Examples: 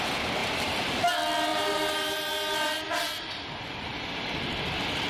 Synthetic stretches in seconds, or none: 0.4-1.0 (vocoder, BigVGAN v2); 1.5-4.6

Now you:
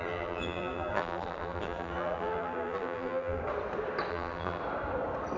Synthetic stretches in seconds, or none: 0.0-3.4 (vocoder, BigVGAN v2); 4.1-4.6

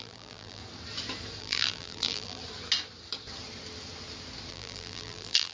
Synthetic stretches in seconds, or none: 0.0-0.6 (vocoder, BigVGAN v2); 1.4-2.4; 4.5-5.5

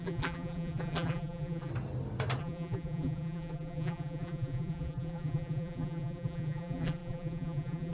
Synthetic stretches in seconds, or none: 0.0-1.7 (vocoder, BigVGAN v2); 2.4-7.9

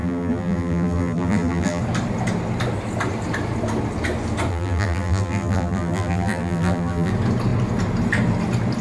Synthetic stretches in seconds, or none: 0.0-1.8 (vocoder, BigVGAN v2); 4.5-7.1

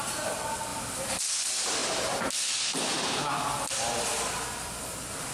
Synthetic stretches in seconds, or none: 0.7-1.3 (vocoder, BigVGAN v2)

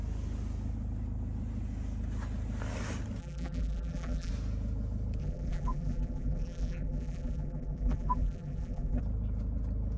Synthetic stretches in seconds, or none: 3.2-4.3 (vocoder, BigVGAN v2); 5.2-9.0

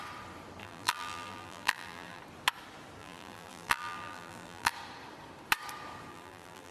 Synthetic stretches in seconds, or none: 0.6-2.2 (vocoder, BigVGAN v2); 3.0-4.7; 6.1-6.7